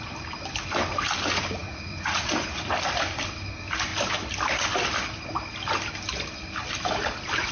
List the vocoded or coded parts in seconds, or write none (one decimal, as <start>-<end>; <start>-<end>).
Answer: 1.6-2.6

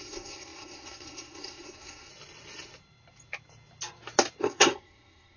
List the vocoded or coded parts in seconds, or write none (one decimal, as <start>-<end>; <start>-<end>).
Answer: 0.0-2.1; 4.4-5.4